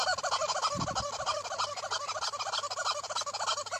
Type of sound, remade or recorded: recorded